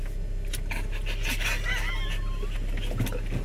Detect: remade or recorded recorded